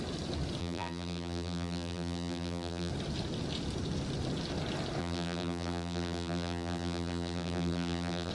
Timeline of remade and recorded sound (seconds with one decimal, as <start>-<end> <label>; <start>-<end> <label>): 0.0-0.6 recorded; 0.6-2.9 remade; 2.9-5.0 recorded; 5.0-8.3 remade